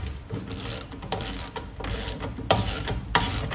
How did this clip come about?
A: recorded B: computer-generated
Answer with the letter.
B